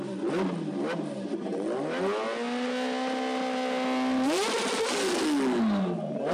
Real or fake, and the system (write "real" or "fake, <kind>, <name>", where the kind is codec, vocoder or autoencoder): real